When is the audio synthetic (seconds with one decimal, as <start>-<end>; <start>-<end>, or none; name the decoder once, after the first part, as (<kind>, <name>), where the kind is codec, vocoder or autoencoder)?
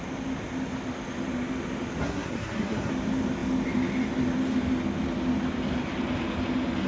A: 2.0-2.9 (codec, SNAC)